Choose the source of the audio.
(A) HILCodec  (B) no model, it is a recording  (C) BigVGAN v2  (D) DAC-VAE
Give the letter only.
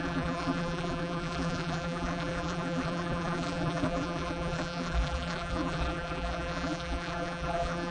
C